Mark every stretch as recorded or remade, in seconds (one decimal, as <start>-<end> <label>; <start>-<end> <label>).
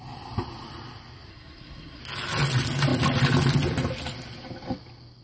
0.0-1.3 recorded; 1.3-2.0 remade; 2.0-5.2 recorded